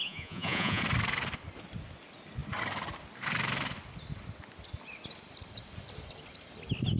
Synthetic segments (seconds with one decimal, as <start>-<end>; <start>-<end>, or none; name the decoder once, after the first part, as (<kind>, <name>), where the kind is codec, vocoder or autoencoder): 0.0-0.8 (vocoder, Vocos)